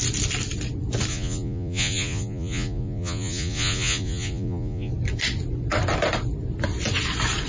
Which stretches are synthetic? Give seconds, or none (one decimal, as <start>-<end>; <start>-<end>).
1.1-4.9